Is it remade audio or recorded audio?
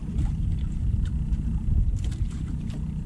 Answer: remade